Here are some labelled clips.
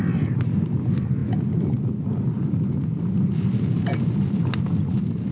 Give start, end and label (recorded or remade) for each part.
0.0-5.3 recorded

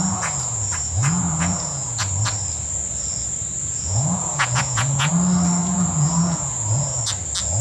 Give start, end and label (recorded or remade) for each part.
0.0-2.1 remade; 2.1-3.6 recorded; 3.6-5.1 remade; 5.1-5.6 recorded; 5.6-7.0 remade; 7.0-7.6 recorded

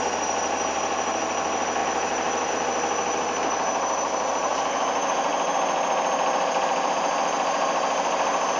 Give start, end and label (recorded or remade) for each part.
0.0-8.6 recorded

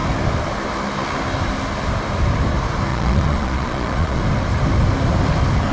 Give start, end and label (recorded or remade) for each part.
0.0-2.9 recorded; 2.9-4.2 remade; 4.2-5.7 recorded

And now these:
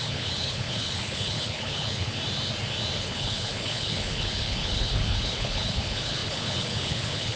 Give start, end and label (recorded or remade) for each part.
0.0-2.2 remade; 2.2-3.0 recorded; 3.0-7.4 remade

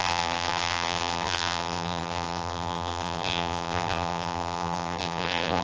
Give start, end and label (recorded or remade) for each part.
0.0-5.6 remade